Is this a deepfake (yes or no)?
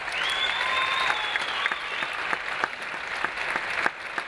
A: no